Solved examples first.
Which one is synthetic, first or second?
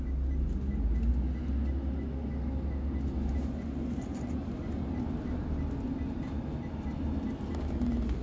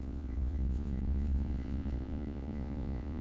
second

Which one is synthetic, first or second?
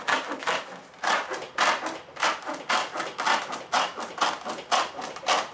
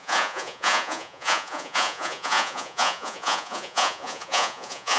second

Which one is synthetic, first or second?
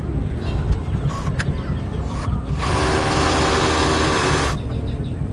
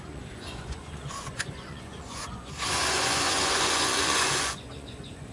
second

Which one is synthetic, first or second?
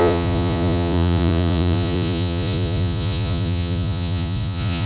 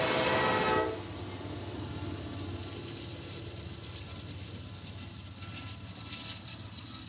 first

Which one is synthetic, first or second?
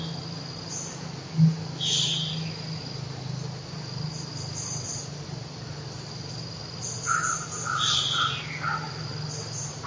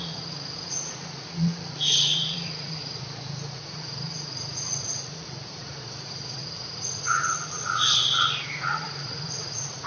second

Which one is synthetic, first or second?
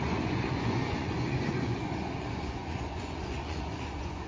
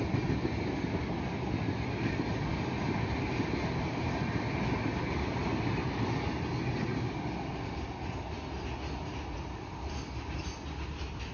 first